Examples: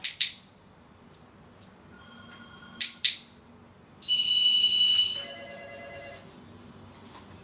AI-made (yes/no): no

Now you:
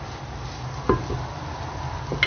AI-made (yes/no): no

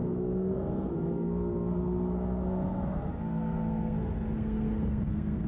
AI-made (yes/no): yes